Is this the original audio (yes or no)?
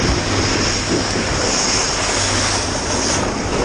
yes